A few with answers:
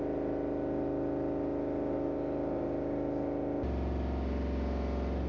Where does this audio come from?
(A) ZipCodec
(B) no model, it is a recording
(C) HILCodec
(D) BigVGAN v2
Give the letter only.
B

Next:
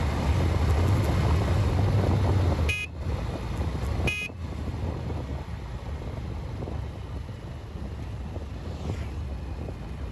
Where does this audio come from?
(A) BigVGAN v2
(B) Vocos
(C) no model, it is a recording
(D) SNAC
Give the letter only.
C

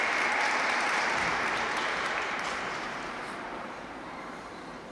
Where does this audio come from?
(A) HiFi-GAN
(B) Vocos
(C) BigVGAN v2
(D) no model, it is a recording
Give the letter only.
C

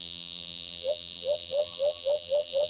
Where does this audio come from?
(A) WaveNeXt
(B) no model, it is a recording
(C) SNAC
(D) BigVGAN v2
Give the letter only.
D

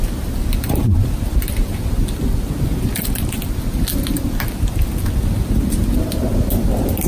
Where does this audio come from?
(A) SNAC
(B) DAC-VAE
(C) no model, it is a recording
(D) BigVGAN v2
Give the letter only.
C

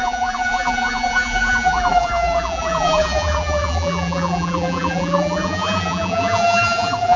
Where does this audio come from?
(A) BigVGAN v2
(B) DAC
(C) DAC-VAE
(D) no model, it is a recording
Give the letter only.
A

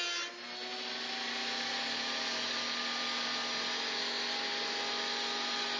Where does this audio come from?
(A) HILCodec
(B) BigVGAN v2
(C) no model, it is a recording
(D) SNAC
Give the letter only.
C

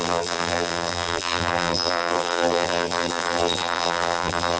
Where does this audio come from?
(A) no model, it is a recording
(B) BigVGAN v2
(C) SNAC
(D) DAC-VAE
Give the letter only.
B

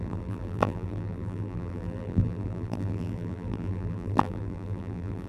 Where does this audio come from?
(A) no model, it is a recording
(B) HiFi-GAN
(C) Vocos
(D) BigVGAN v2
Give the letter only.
D